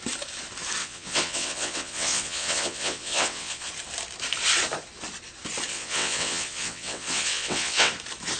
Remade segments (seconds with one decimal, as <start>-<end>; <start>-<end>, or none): 0.8-3.7; 5.7-7.9